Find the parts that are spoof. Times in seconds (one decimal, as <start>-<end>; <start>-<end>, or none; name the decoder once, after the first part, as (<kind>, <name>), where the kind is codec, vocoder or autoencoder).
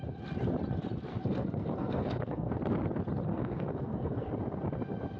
1.1-2.5 (codec, SNAC); 3.3-4.3